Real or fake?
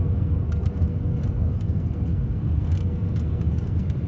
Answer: fake